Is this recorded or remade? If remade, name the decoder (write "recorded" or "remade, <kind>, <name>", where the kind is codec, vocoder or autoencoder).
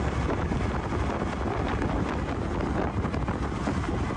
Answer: recorded